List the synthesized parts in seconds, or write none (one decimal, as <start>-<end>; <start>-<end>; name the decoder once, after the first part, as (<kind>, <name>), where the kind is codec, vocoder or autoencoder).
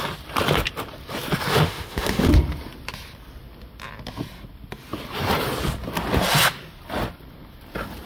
1.5-2.3 (autoencoder, DAC-VAE)